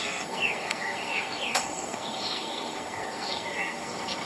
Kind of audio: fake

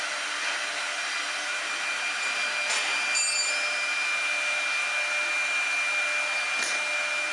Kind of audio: real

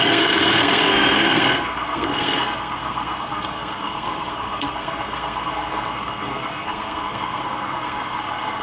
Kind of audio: fake